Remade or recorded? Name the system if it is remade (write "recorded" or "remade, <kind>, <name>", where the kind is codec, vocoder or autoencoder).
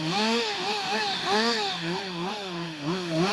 remade, autoencoder, DAC-VAE